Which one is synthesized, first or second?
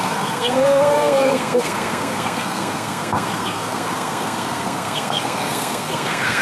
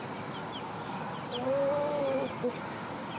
first